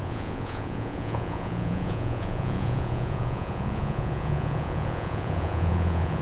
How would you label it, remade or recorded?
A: remade